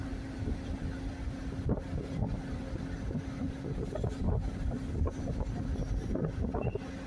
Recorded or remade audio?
recorded